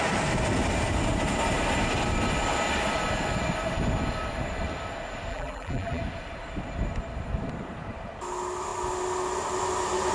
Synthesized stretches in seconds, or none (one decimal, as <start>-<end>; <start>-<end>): 5.3-6.0